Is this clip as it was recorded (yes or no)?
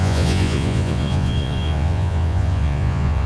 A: no